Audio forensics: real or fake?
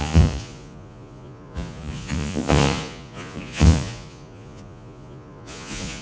fake